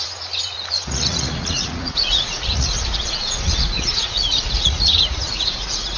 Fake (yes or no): yes